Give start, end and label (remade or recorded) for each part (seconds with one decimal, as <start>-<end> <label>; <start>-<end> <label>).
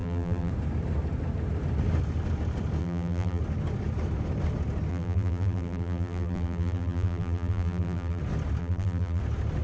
0.0-0.5 remade; 0.5-2.8 recorded; 2.8-3.4 remade; 3.4-4.9 recorded; 4.9-8.2 remade; 8.2-8.6 recorded; 8.6-9.2 remade; 9.2-9.6 recorded